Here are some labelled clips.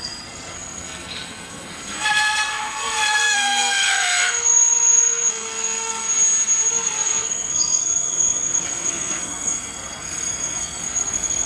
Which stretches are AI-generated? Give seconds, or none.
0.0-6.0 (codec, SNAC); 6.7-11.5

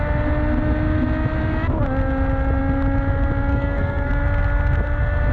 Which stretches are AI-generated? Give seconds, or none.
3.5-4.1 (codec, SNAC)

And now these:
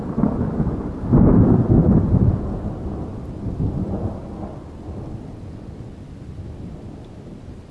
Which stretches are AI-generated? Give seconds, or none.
none

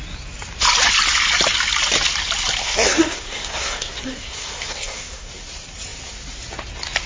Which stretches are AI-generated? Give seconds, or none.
2.6-5.3 (codec, SNAC)

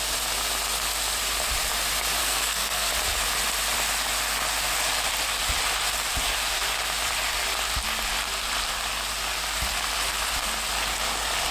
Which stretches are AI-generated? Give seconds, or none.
2.2-2.9 (codec, SNAC)

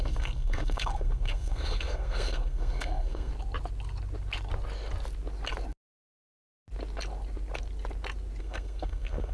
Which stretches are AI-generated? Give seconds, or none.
0.0-3.3 (codec, SNAC); 8.4-9.3

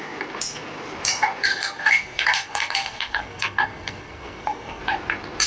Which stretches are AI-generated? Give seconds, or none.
1.5-4.8 (codec, SNAC)